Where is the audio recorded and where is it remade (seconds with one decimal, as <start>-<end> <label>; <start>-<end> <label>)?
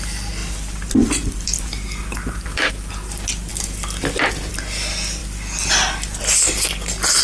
0.0-0.4 recorded; 0.4-2.7 remade; 2.7-5.2 recorded; 5.2-6.2 remade; 6.2-7.2 recorded